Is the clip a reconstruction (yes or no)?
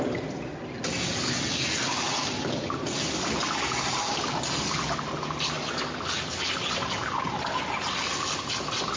no